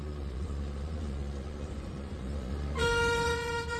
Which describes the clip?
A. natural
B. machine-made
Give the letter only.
B